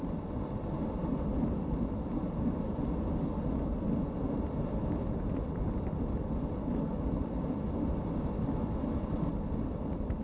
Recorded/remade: recorded